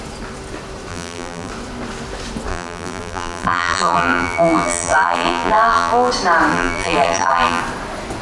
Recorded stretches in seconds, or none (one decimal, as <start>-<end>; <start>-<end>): 0.0-0.9; 1.5-2.5; 6.1-6.5; 7.6-8.2